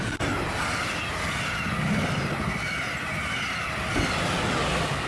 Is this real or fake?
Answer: real